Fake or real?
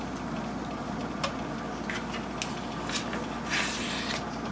real